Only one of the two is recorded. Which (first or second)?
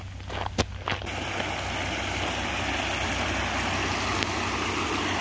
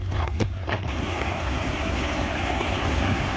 first